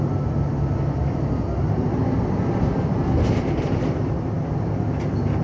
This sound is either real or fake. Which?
real